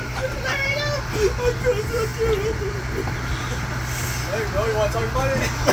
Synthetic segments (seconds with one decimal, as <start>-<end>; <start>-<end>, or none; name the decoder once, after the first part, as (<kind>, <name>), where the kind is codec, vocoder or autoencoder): none